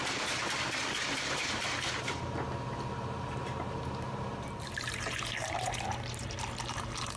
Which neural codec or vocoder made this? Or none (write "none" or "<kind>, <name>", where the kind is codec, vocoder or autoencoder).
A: vocoder, BigVGAN v2